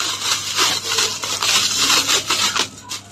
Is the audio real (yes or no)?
yes